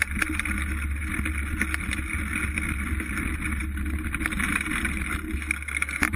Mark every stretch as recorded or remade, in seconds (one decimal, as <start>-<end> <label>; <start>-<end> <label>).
0.0-6.2 recorded